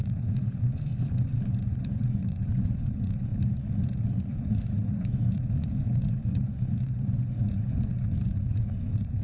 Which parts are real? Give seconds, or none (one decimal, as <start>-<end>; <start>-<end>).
0.9-1.5; 3.3-4.3